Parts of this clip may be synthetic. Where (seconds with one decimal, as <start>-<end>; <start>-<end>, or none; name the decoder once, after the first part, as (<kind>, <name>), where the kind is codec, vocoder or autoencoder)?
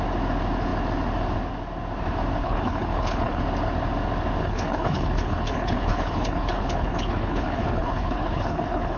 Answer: 2.4-3.4 (codec, HILCodec); 4.4-9.0